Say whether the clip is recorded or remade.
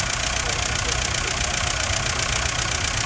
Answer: recorded